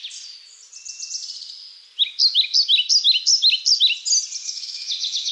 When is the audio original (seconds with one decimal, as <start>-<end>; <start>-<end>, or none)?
0.0-4.4